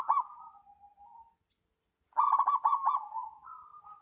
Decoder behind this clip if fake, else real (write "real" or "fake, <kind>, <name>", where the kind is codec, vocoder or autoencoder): real